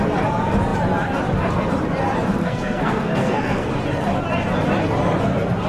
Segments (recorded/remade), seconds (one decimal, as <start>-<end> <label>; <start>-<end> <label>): 0.0-2.4 recorded; 2.4-3.7 remade; 3.7-5.7 recorded